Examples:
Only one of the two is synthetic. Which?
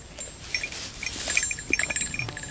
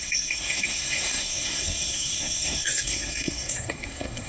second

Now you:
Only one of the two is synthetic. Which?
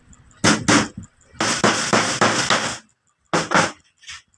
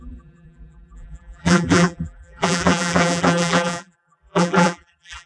second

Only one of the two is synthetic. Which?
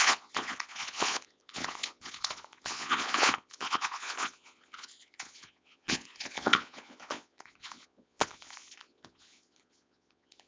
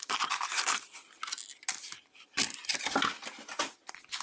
first